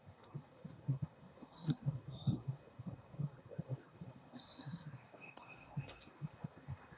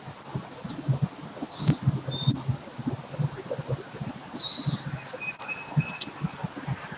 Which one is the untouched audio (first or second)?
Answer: second